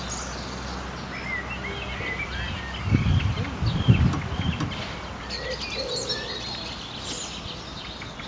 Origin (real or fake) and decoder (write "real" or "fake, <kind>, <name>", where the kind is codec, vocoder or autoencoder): real